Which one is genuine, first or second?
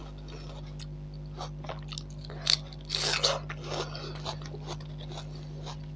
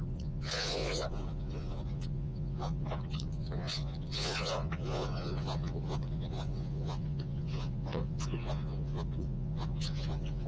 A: first